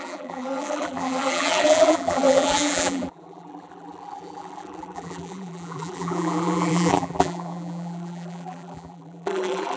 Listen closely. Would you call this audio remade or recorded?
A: remade